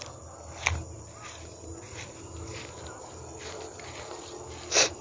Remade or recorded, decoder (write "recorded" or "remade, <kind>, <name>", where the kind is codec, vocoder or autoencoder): recorded